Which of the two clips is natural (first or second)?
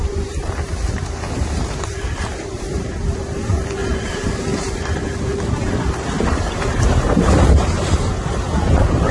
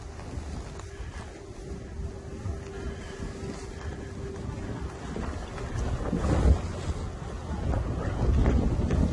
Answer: second